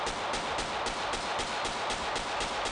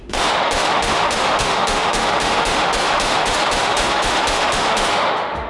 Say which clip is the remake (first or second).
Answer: second